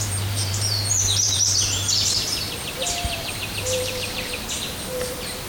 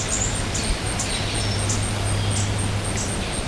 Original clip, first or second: second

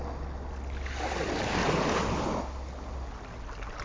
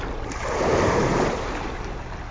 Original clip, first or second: first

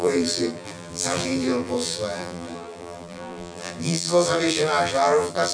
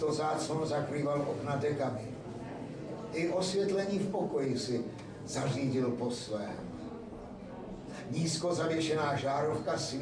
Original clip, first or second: second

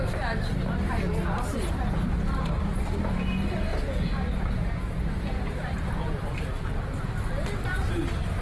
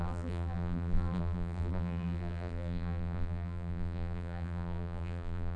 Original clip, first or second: first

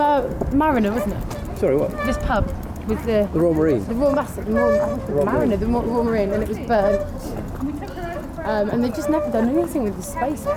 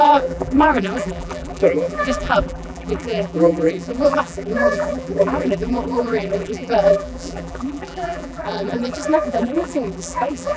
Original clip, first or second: first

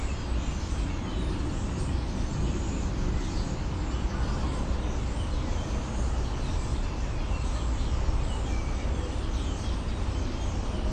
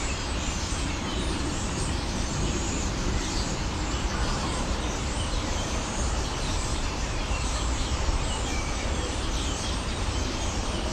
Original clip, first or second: first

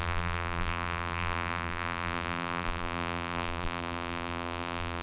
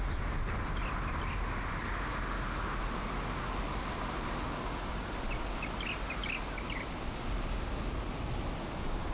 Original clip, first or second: second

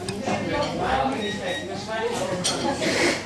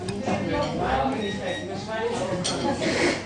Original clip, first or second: second